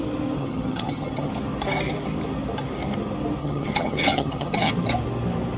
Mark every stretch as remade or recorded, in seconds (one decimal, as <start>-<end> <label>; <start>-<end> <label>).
0.0-0.4 recorded; 0.4-1.3 remade; 1.3-3.4 recorded; 3.4-4.7 remade; 4.7-5.6 recorded